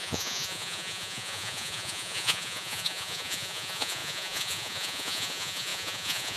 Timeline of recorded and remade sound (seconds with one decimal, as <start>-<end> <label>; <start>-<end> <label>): 0.0-6.4 remade